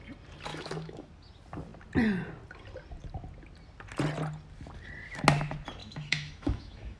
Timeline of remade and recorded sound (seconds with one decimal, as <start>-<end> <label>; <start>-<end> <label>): 0.0-0.5 recorded; 0.5-1.1 remade; 1.1-5.8 recorded; 5.8-7.0 remade